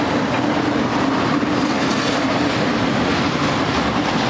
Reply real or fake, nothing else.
real